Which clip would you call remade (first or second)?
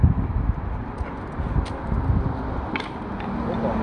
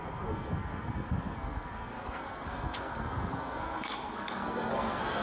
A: second